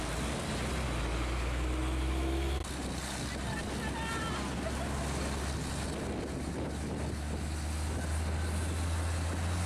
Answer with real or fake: real